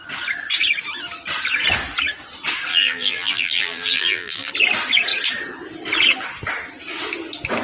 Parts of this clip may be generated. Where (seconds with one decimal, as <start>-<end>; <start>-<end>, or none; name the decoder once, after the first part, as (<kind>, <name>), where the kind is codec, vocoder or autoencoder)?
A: 2.7-4.5 (vocoder, BigVGAN v2)